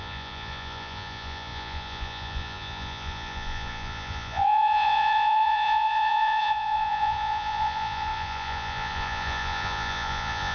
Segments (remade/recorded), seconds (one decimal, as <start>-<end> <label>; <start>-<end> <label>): 0.0-10.5 remade